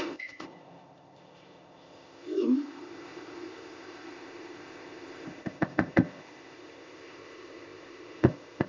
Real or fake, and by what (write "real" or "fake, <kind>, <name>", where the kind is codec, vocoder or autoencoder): fake, codec, ZipCodec